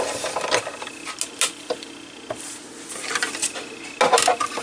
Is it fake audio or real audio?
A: real